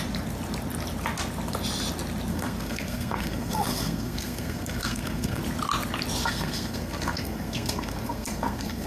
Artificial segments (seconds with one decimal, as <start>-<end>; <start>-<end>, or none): 2.3-5.4; 6.2-8.9